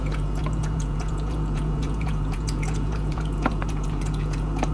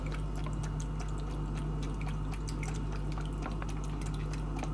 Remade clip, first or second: first